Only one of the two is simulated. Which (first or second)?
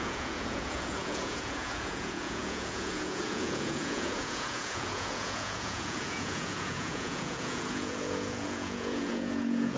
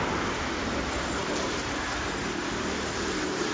first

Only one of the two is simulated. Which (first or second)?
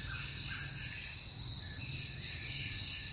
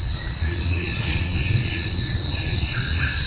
second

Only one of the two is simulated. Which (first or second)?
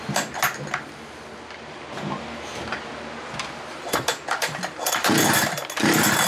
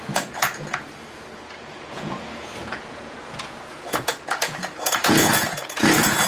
second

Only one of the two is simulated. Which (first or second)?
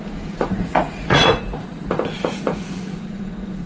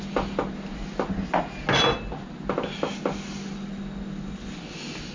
first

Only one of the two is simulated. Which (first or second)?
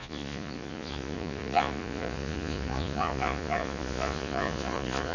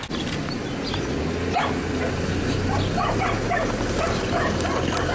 first